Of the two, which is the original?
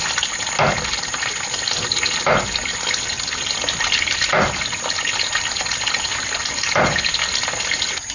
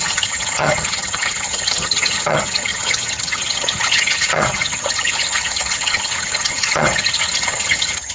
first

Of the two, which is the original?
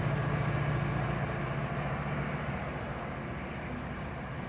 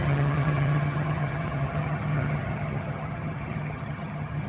first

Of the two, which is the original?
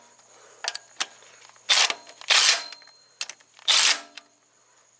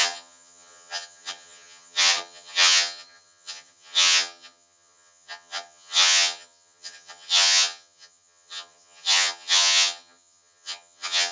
first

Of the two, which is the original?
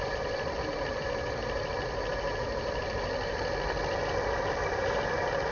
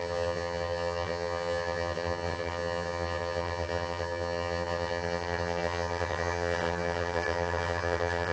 first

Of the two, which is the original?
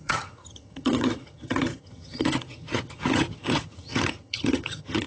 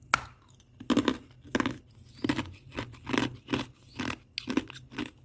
second